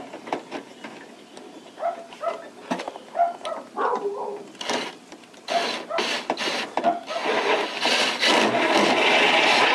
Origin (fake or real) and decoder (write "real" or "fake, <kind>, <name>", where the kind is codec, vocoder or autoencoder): real